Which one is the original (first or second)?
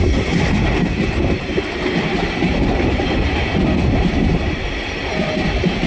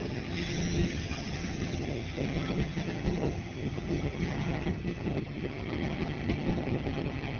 first